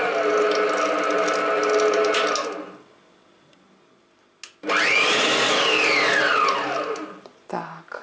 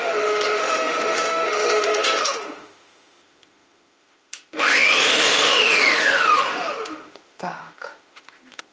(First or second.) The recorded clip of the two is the first